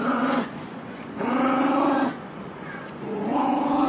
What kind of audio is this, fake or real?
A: fake